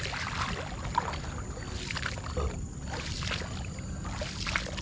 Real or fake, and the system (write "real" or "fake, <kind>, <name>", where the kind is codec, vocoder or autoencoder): real